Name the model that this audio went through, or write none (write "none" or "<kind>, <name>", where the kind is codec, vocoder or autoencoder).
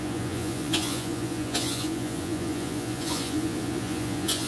vocoder, Vocos